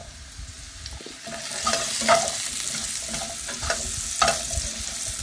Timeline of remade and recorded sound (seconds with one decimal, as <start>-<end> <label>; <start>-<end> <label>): 0.0-0.6 remade; 0.6-5.2 recorded